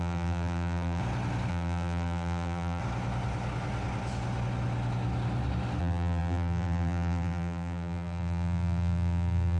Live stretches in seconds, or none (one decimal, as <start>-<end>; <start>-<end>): 1.0-1.5; 2.8-5.8

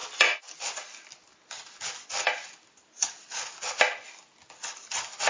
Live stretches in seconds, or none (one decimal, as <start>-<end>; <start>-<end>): 0.0-5.3

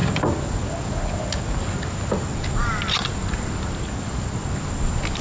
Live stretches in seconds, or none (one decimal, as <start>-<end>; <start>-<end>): 0.0-5.2

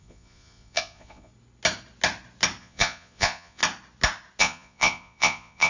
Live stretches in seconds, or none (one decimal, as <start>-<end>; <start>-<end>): 1.3-2.6; 3.6-4.4

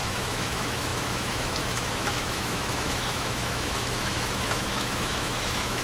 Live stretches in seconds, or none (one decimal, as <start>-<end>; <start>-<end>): none

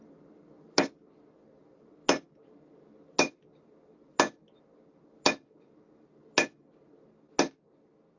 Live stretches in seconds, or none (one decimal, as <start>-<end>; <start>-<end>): 0.0-8.2